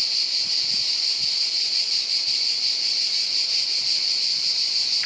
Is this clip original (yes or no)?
yes